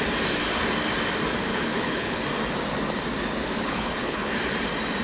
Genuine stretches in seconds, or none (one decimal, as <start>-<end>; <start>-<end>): 0.0-1.5; 2.2-3.6; 4.3-5.0